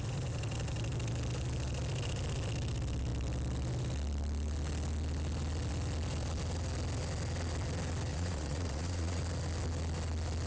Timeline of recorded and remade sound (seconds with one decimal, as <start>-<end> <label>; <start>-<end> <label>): 0.0-8.1 recorded; 8.1-9.2 remade; 9.2-10.5 recorded